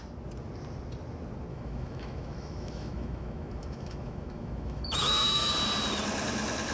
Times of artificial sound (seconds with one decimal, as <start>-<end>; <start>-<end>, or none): 1.5-5.5